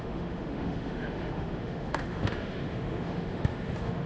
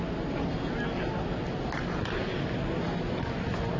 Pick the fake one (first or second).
first